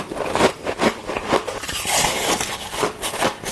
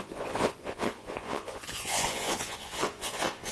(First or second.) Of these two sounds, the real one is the first